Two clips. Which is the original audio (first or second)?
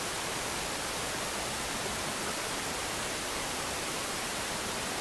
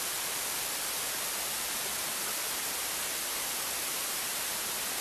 second